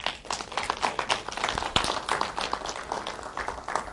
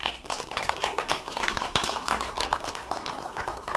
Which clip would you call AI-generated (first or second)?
second